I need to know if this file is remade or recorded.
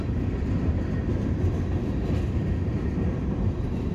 remade